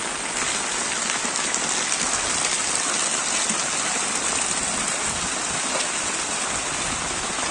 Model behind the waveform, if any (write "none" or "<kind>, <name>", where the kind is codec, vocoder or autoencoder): none